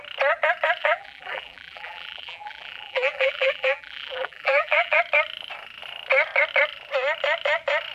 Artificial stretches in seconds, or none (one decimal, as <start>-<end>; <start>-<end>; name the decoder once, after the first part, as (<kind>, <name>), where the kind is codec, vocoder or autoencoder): 0.8-5.0 (vocoder, BigVGAN v2)